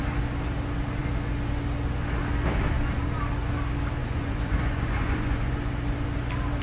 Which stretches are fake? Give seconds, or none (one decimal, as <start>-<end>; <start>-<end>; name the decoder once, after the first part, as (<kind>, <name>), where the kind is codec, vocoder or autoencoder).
4.0-5.5 (vocoder, Vocos)